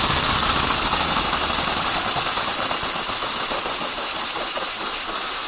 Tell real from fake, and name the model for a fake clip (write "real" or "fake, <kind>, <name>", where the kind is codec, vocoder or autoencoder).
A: real